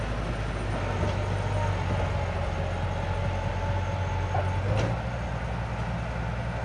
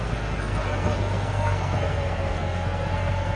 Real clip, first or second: first